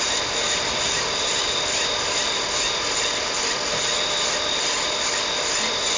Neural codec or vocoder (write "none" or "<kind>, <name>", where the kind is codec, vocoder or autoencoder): none